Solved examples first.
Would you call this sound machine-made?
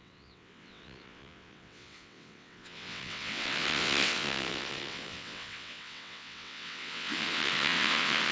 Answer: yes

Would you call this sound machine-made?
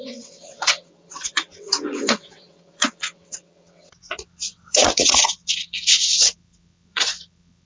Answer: yes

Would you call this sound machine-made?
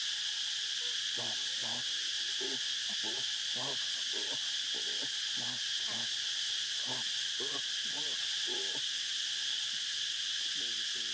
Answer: no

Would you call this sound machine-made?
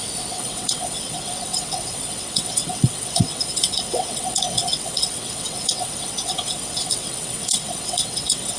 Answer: yes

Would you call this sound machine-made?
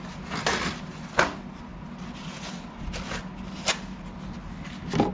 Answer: no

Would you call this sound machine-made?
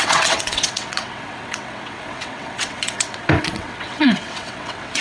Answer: yes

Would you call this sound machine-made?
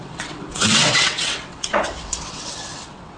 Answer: yes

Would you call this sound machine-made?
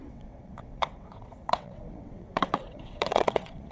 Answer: yes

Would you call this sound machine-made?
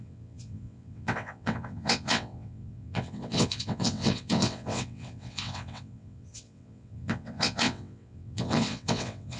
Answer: yes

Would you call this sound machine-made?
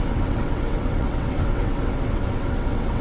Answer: yes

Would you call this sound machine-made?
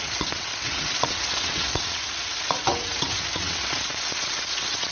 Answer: yes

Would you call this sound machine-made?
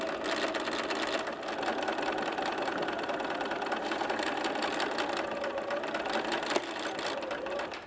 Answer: no